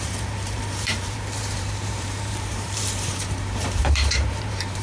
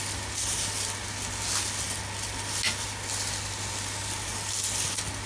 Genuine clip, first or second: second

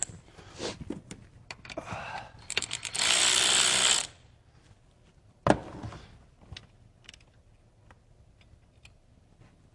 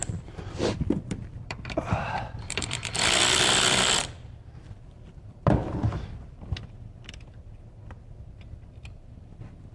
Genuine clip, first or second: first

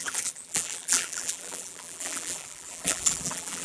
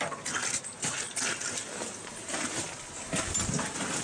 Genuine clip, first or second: second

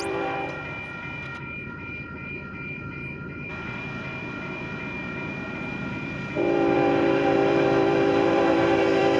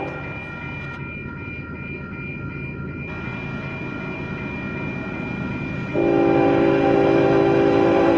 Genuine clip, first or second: second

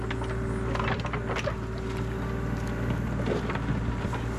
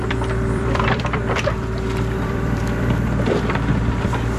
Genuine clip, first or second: first